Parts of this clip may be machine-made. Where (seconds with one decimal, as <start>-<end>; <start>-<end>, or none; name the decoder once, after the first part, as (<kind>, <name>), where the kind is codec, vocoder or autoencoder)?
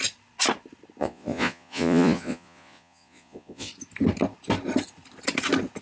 1.0-3.7 (vocoder, Vocos)